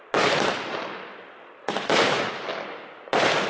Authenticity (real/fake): real